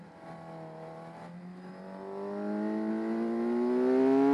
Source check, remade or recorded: recorded